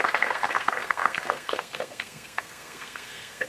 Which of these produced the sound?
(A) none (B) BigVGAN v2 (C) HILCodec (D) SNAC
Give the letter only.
D